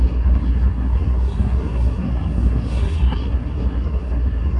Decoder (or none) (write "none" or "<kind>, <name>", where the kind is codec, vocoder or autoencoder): codec, SNAC